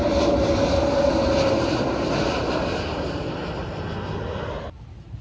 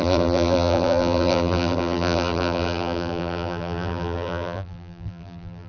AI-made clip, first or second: second